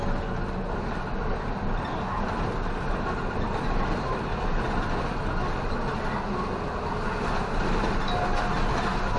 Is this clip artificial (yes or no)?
no